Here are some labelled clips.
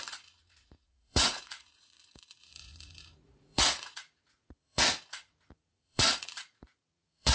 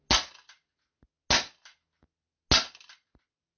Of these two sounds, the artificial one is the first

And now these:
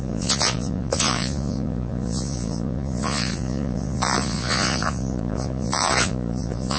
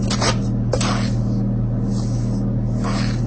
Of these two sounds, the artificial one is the first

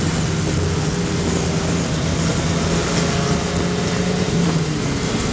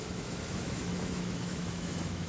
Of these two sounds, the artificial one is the second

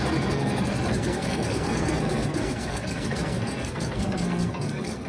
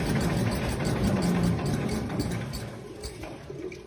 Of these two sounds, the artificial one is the first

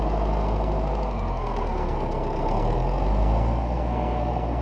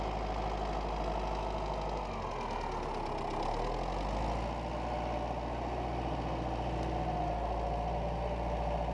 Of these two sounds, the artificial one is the first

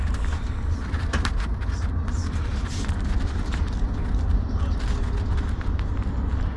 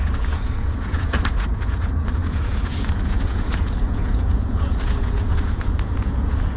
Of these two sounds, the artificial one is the second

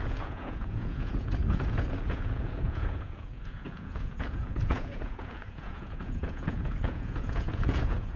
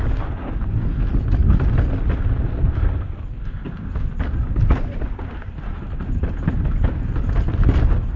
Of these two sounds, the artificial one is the first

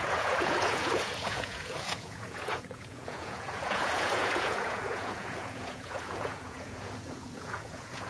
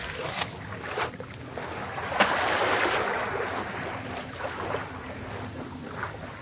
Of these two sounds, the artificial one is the first